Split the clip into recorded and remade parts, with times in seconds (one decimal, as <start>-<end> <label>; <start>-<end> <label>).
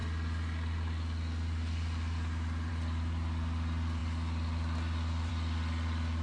0.0-6.2 recorded